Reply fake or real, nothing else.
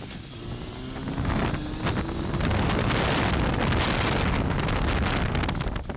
real